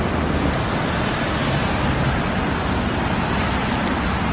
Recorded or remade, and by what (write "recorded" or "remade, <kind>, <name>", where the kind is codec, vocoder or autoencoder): recorded